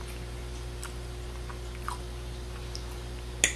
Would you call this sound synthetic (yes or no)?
no